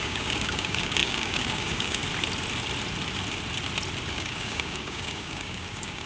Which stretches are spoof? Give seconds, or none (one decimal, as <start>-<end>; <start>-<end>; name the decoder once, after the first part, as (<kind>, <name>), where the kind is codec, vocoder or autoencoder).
0.0-2.0 (codec, DAC); 4.1-6.1